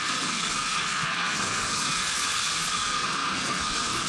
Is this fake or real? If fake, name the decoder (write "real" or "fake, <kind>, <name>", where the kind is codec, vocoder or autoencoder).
fake, codec, SNAC